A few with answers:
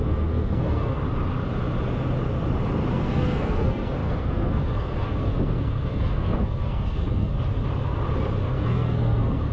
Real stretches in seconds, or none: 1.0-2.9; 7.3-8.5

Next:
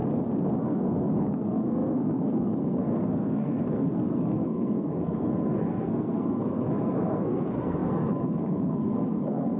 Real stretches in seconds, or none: 0.0-0.6

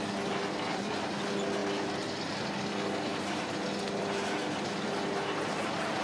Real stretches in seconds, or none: 0.0-6.0

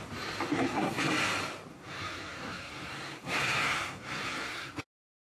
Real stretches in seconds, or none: 0.0-0.5; 1.0-1.7; 4.8-5.2

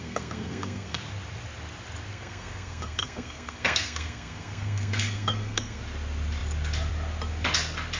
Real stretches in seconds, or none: 1.0-2.1; 5.8-8.0

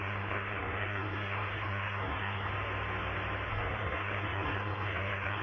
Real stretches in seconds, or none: 2.5-3.5

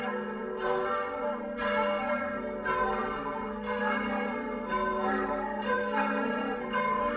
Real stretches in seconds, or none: none

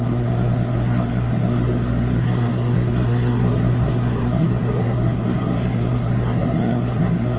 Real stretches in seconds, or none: none